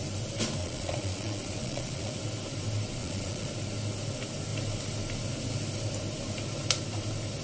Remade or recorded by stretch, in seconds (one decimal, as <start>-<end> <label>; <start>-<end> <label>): 0.0-0.6 recorded; 0.6-2.1 remade; 2.1-3.0 recorded; 3.0-3.5 remade; 3.5-7.4 recorded